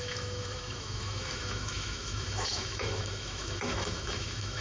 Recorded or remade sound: remade